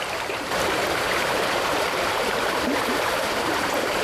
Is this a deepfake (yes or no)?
yes